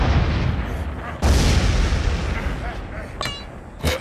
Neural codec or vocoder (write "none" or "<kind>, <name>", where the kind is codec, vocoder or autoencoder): none